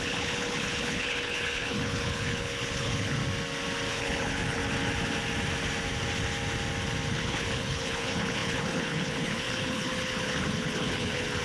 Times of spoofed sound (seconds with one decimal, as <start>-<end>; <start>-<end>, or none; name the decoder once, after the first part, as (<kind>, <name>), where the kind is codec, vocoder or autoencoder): 0.0-3.2 (codec, HILCodec); 3.9-4.6; 7.1-11.4